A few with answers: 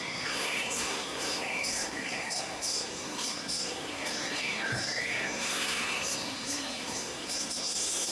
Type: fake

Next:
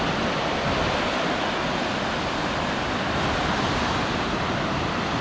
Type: real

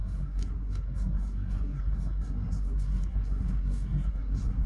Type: fake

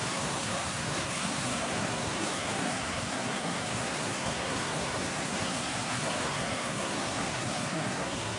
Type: fake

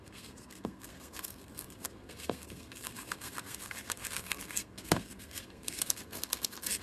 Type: fake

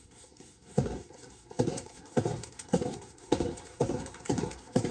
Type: fake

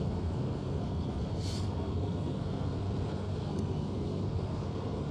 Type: fake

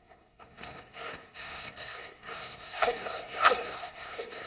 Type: fake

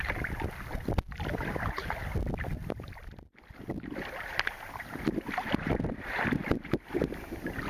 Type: real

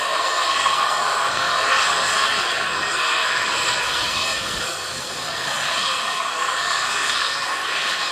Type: fake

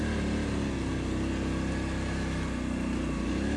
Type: real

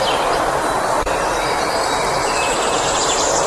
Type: real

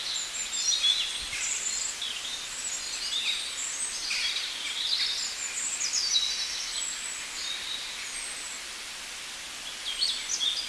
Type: real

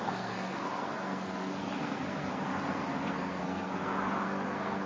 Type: fake